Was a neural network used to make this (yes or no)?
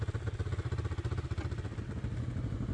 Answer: no